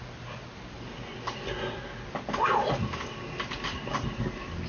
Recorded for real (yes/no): yes